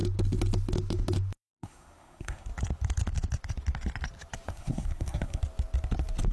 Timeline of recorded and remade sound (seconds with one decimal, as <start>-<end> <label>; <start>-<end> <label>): 0.0-1.5 recorded; 1.5-2.5 remade; 2.5-4.5 recorded; 4.5-5.4 remade; 5.4-6.3 recorded